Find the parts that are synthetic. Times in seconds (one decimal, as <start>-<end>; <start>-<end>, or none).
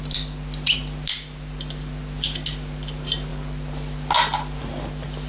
none